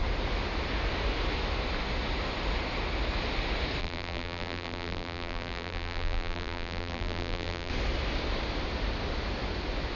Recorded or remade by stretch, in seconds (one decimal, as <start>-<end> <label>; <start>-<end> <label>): 0.0-3.8 recorded; 3.8-7.7 remade; 7.7-10.0 recorded